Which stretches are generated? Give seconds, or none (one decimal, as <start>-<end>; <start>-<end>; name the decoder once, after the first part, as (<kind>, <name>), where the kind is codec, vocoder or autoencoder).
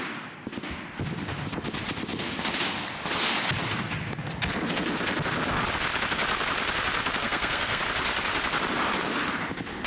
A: 7.2-7.8 (codec, SNAC)